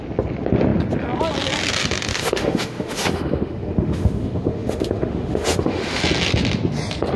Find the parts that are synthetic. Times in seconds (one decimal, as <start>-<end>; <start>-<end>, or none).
2.1-6.0